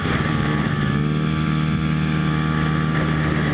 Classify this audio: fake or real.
real